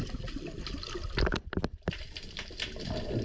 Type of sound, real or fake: real